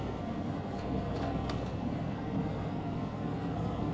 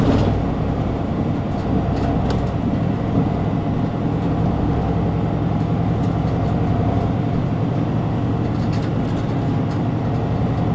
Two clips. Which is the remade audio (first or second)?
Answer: first